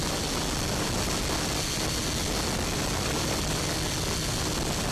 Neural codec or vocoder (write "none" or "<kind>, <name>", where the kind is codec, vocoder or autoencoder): none